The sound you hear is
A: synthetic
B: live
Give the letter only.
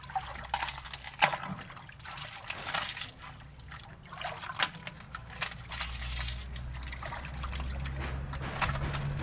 B